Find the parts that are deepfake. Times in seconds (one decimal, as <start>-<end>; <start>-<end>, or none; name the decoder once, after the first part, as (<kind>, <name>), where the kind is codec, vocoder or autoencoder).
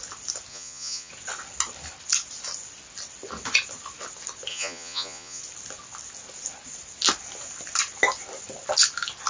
0.5-1.1 (vocoder, Vocos); 4.5-5.4